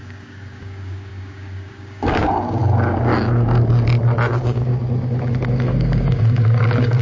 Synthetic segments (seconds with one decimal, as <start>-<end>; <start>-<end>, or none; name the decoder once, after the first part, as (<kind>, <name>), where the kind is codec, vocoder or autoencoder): 0.0-2.6 (codec, DAC); 4.3-4.7; 5.6-7.0